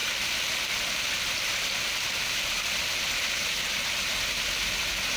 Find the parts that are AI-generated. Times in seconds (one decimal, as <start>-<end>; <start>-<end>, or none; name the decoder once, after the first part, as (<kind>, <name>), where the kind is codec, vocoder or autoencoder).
none